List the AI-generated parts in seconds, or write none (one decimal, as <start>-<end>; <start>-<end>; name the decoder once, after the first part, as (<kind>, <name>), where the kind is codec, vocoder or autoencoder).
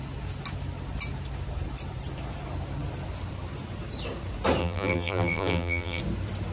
4.6-6.0 (vocoder, BigVGAN v2)